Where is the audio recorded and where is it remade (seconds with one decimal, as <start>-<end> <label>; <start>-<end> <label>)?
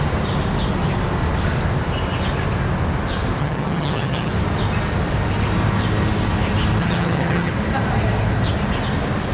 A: 0.0-3.4 recorded; 3.4-4.3 remade; 4.3-6.8 recorded; 6.8-7.5 remade; 7.5-9.3 recorded